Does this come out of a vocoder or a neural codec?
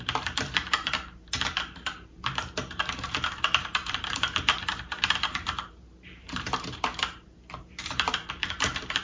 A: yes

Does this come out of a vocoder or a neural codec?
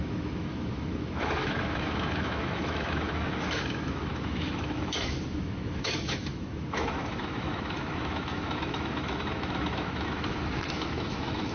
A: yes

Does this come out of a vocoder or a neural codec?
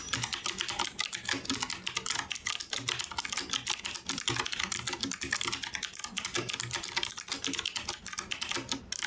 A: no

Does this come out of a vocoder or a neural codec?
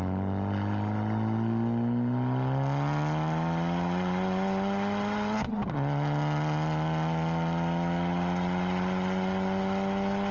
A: no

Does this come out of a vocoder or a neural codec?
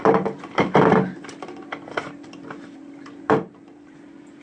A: yes